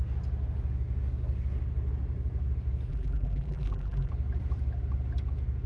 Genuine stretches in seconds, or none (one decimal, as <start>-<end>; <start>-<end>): 0.0-2.9; 4.1-5.7